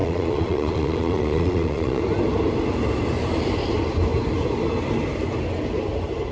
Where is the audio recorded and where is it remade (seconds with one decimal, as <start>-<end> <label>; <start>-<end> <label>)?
0.0-2.0 remade; 2.0-6.3 recorded